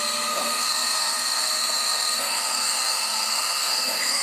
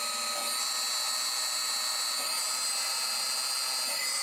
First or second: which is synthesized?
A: first